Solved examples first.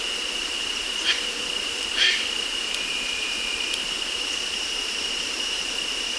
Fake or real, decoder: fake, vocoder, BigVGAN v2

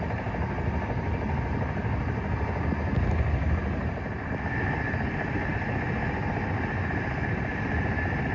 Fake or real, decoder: real